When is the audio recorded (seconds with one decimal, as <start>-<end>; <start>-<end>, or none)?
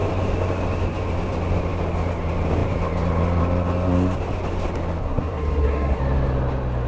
0.0-5.0; 6.0-6.9